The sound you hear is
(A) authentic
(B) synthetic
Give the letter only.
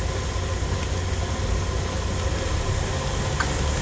A